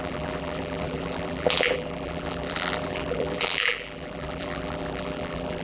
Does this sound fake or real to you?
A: fake